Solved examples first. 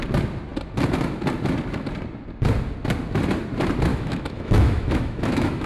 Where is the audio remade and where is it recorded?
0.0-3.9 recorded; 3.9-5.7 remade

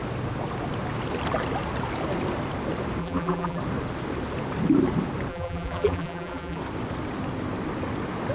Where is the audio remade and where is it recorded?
0.0-3.0 recorded; 3.0-3.6 remade; 3.6-5.3 recorded; 5.3-6.6 remade; 6.6-8.3 recorded

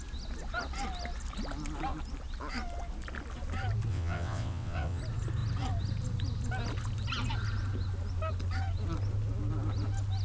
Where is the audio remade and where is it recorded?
0.0-3.9 recorded; 3.9-5.0 remade; 5.0-10.2 recorded

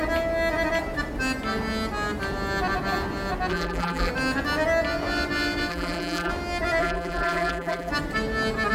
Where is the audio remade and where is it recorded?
0.0-3.5 recorded; 3.5-4.1 remade; 4.1-5.7 recorded; 5.7-6.3 remade; 6.3-6.8 recorded; 6.8-7.9 remade; 7.9-8.7 recorded

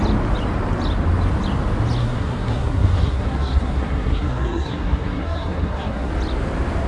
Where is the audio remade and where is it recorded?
0.0-2.0 recorded; 2.0-6.1 remade; 6.1-6.9 recorded

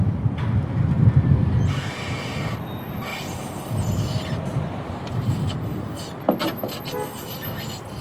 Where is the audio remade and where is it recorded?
0.0-3.1 recorded; 3.1-3.7 remade; 3.7-4.5 recorded; 4.5-5.5 remade; 5.5-7.1 recorded; 7.1-7.6 remade; 7.6-8.0 recorded

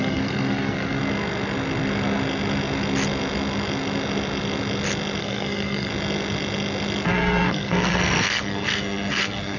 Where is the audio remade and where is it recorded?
0.0-1.0 remade; 1.0-5.2 recorded; 5.2-5.9 remade; 5.9-7.1 recorded; 7.1-9.6 remade

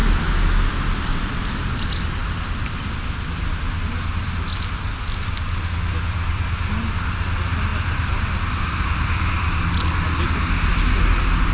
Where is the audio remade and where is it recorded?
0.0-11.5 recorded